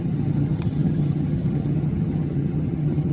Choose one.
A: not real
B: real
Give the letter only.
A